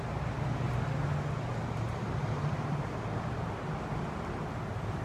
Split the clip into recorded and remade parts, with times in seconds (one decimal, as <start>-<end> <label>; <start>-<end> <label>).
0.0-5.0 recorded